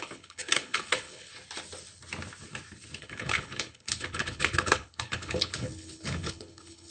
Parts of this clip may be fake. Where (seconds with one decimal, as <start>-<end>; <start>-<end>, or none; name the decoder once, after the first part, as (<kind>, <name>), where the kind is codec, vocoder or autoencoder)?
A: 0.0-1.3 (codec, HILCodec); 3.0-6.9